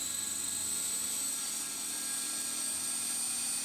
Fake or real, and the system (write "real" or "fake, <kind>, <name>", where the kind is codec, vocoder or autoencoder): real